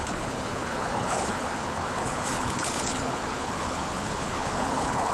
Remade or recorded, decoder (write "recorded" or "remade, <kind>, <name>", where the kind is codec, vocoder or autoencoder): remade, codec, HILCodec